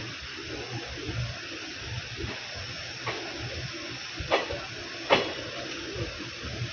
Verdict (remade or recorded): recorded